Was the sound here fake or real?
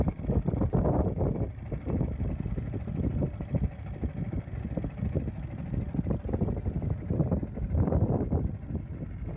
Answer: real